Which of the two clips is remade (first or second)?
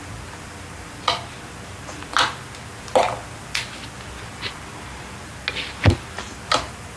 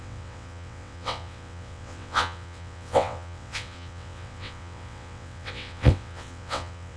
second